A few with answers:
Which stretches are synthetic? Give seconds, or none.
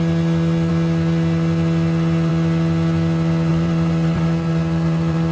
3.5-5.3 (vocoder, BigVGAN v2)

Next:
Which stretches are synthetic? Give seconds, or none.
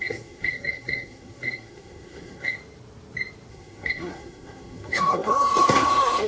0.0-2.6 (codec, SNAC); 3.5-6.3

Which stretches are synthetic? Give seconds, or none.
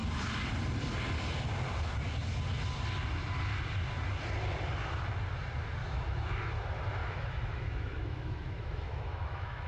5.8-6.5 (autoencoder, DAC-VAE); 7.0-9.7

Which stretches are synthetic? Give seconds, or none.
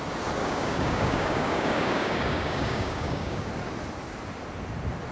0.4-3.5 (codec, DAC)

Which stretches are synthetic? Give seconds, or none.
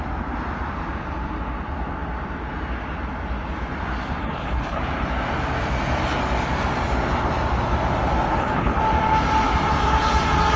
4.2-4.8 (codec, HILCodec); 8.3-8.8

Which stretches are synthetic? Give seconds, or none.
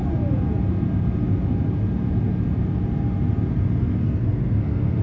4.0-5.0 (codec, SNAC)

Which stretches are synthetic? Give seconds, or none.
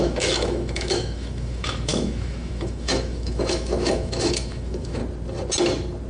0.0-5.0 (autoencoder, DAC-VAE)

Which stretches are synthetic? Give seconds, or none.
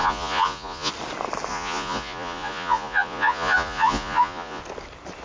0.0-0.9 (vocoder, Vocos); 1.5-4.6